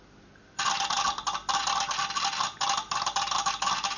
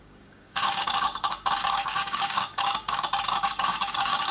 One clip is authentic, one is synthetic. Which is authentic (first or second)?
first